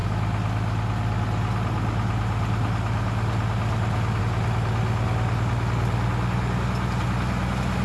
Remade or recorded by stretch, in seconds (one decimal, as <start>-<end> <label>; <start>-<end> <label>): 0.0-7.8 recorded